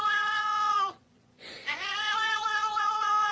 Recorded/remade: remade